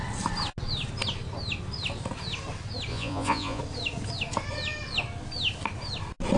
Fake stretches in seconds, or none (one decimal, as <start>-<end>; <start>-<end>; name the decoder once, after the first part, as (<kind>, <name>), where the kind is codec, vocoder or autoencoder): 2.9-3.6 (vocoder, Vocos)